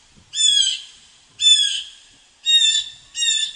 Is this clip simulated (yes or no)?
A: no